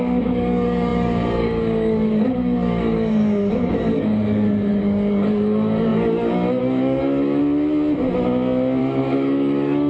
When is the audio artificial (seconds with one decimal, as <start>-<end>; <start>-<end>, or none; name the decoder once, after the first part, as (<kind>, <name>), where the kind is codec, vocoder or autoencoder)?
0.0-7.4 (codec, DAC); 8.8-9.9